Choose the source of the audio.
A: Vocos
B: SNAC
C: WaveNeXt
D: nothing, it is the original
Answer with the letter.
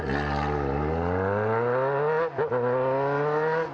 D